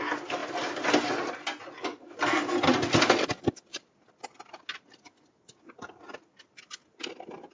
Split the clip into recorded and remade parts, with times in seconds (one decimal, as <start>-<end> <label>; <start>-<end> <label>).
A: 0.0-7.5 recorded